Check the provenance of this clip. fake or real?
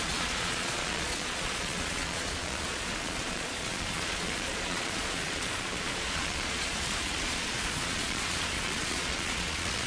fake